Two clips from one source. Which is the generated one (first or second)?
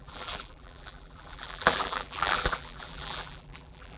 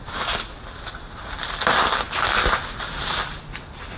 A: first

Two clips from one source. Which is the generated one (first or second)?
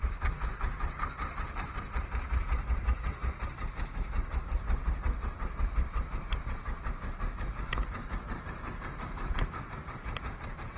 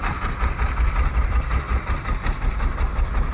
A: first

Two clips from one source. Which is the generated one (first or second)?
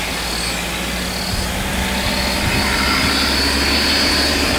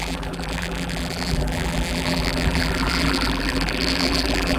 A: second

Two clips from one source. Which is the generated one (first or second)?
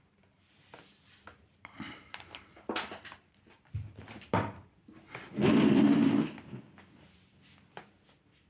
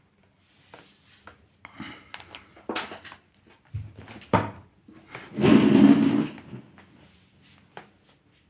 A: first